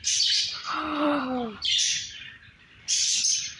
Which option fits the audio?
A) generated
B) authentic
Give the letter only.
A